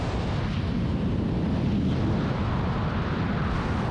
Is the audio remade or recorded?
recorded